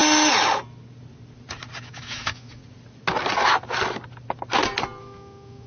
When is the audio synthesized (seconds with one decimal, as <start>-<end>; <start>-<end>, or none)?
1.8-2.6; 5.0-5.7

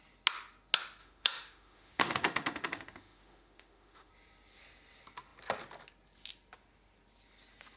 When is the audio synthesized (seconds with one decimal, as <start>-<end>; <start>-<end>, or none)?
1.0-4.1

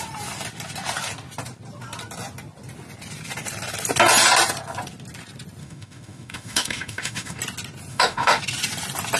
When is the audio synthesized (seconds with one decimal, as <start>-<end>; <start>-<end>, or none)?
5.6-7.4; 7.9-8.4

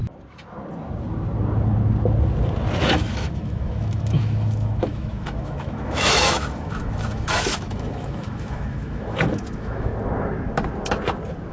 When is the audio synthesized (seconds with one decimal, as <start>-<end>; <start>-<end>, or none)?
2.8-9.9

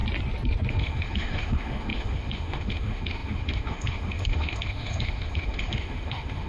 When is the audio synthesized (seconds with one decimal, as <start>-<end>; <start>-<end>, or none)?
0.7-6.5

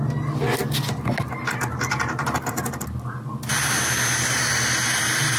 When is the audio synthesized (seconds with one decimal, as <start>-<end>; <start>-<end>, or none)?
none